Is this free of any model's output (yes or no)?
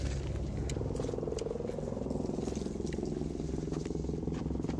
yes